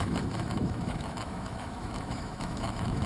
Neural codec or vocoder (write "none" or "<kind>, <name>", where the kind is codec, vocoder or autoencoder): autoencoder, DAC-VAE